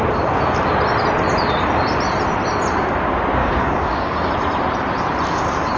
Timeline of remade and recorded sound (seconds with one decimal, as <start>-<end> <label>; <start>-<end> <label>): 0.0-3.4 recorded; 3.4-4.3 remade; 4.3-5.8 recorded

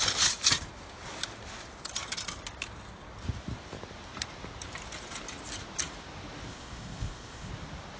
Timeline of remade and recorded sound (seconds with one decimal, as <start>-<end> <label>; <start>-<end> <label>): 0.0-6.5 recorded; 6.5-7.5 remade; 7.5-8.0 recorded

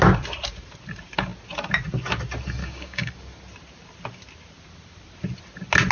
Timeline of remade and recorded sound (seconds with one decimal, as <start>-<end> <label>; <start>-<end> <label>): 0.0-2.6 recorded; 2.6-3.1 remade; 3.1-5.9 recorded

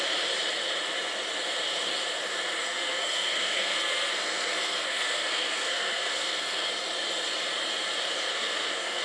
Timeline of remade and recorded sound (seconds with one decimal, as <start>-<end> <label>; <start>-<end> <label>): 0.0-2.6 recorded; 2.6-6.7 remade; 6.7-8.3 recorded; 8.3-9.0 remade

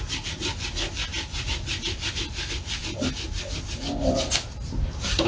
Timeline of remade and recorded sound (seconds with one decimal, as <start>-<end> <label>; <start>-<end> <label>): 0.0-5.3 recorded